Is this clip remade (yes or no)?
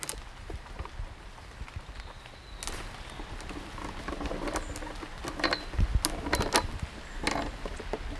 no